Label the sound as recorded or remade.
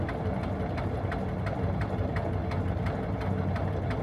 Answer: recorded